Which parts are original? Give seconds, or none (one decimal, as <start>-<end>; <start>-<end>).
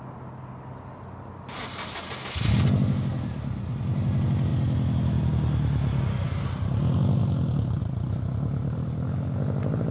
0.0-7.2; 7.8-9.9